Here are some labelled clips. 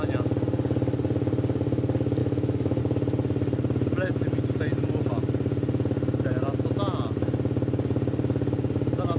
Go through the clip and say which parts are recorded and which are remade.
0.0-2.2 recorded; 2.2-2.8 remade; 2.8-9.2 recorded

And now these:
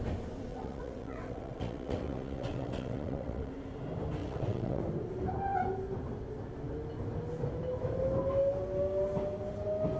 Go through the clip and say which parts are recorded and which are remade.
0.0-0.5 recorded; 0.5-3.5 remade; 3.5-4.2 recorded; 4.2-4.8 remade; 4.8-10.0 recorded

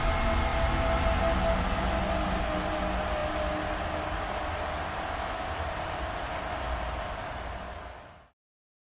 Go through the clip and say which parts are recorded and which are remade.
0.0-8.9 recorded

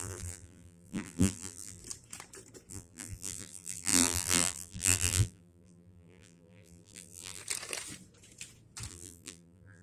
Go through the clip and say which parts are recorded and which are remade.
0.0-1.8 remade; 1.8-2.7 recorded; 2.7-7.4 remade; 7.4-8.9 recorded; 8.9-9.8 remade

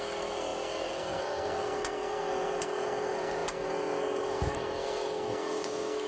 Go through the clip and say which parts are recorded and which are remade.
0.0-6.1 remade

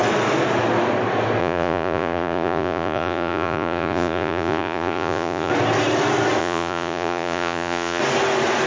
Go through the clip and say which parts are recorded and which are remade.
0.0-1.4 recorded; 1.4-5.5 remade; 5.5-6.4 recorded; 6.4-8.0 remade; 8.0-8.7 recorded